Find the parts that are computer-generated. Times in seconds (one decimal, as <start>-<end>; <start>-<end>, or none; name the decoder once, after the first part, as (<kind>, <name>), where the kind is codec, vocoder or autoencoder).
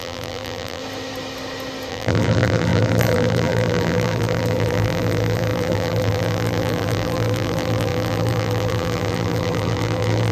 0.0-0.8 (vocoder, BigVGAN v2); 1.9-10.3